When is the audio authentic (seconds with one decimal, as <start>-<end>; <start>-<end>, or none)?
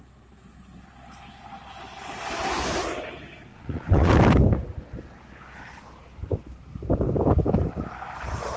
0.0-3.5; 4.1-8.6